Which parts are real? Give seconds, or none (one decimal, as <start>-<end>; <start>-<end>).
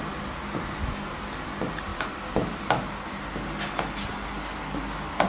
0.0-5.3